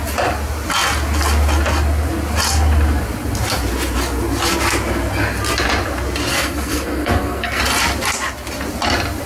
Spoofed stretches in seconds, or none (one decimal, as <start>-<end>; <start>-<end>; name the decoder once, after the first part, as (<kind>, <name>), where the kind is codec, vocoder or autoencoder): 6.3-7.6 (codec, SNAC)